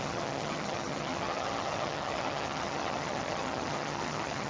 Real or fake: fake